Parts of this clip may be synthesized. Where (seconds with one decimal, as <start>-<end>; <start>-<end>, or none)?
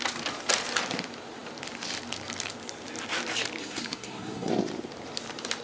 3.6-4.5